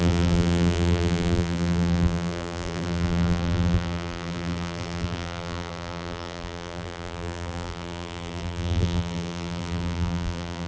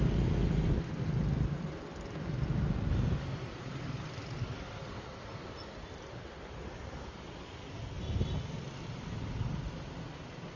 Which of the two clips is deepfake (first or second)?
first